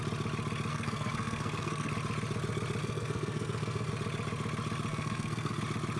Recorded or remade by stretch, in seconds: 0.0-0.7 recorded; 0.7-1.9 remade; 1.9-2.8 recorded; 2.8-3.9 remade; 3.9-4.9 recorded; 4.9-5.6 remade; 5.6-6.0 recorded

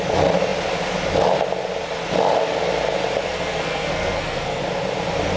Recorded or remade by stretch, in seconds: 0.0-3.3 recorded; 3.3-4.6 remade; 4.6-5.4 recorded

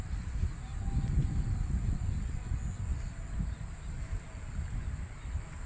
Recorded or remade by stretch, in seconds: 0.0-5.7 recorded